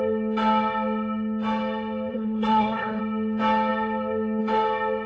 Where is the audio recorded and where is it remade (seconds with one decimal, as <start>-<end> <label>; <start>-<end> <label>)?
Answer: 0.0-2.1 recorded; 2.1-3.0 remade; 3.0-5.1 recorded